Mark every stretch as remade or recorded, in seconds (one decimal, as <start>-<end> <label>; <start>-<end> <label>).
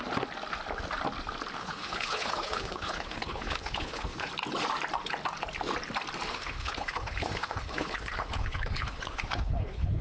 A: 0.0-1.6 recorded; 1.6-4.3 remade; 4.3-6.3 recorded; 6.3-10.0 remade